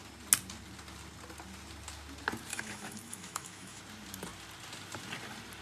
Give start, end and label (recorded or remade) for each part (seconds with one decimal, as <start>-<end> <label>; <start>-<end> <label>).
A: 0.0-2.5 recorded; 2.5-3.8 remade; 3.8-5.6 recorded